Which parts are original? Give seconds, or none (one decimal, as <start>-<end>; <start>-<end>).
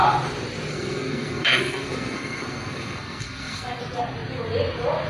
0.0-0.7; 3.8-5.1